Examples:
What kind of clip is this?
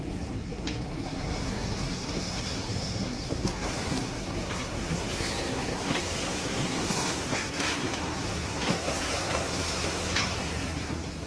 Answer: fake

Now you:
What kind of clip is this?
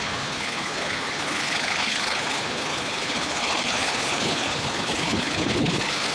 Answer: fake